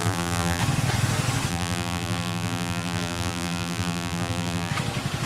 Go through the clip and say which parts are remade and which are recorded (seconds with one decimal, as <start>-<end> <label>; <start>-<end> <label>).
0.0-0.6 remade; 0.6-1.5 recorded; 1.5-4.7 remade; 4.7-5.3 recorded